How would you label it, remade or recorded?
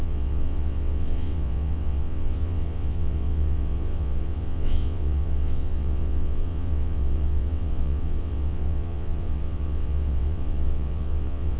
remade